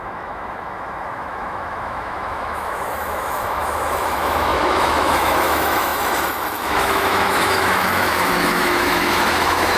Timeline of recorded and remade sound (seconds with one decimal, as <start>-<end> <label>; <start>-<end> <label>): 0.0-9.8 remade